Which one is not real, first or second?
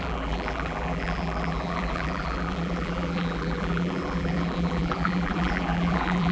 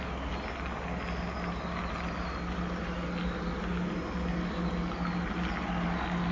first